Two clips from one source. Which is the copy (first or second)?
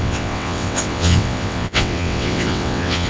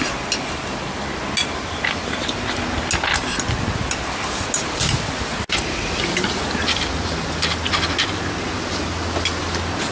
first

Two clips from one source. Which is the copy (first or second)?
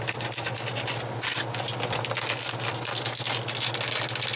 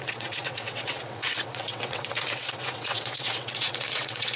second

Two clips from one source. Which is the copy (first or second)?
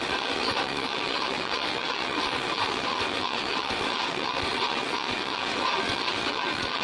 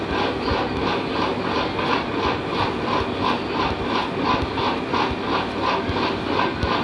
first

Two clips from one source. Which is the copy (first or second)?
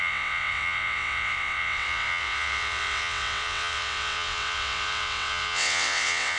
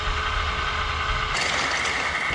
first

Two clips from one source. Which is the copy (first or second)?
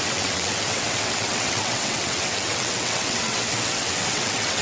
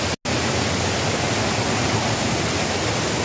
first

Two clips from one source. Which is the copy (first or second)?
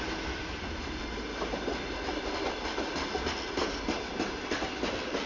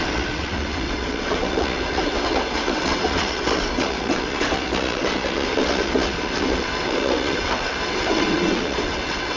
second